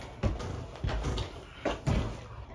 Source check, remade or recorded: recorded